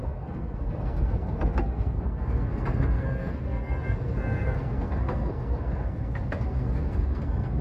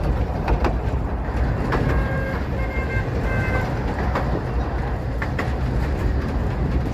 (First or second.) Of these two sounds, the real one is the second